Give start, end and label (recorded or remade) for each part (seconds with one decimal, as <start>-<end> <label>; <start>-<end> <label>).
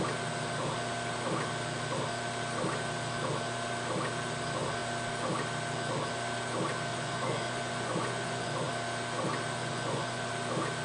0.0-6.9 recorded; 6.9-8.7 remade; 8.7-9.6 recorded; 9.6-10.3 remade; 10.3-10.8 recorded